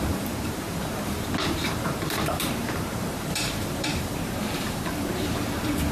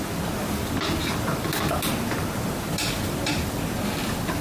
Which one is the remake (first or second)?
first